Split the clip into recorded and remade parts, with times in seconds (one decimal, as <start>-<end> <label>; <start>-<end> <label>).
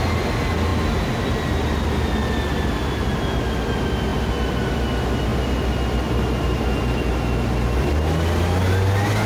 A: 0.0-9.3 recorded